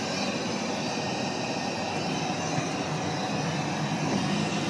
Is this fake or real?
real